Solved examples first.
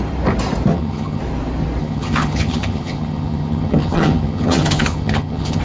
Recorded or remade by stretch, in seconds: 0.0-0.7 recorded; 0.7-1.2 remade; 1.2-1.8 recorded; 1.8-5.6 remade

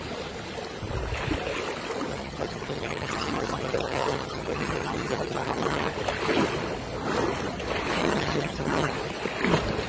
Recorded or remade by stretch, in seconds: 0.0-2.1 recorded; 2.1-5.9 remade; 5.9-8.0 recorded; 8.0-8.9 remade; 8.9-9.9 recorded

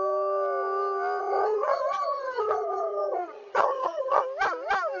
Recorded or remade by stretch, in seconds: 0.0-1.2 recorded; 1.2-4.2 remade; 4.2-5.0 recorded

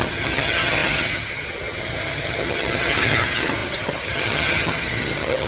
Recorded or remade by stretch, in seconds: 0.0-5.5 remade

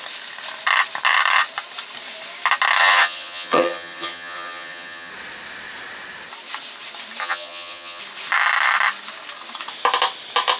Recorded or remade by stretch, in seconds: 0.0-2.8 recorded; 2.8-5.1 remade; 5.1-7.2 recorded; 7.2-8.0 remade; 8.0-10.6 recorded

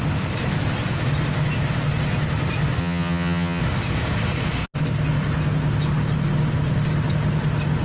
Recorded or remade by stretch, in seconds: 0.0-2.8 recorded; 2.8-3.6 remade; 3.6-7.8 recorded